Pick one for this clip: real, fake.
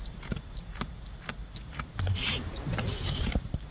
fake